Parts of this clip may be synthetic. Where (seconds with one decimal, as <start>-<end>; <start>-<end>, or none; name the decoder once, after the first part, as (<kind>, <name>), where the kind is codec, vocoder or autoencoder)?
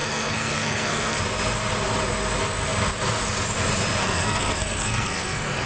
0.0-1.2 (codec, SNAC); 4.0-5.7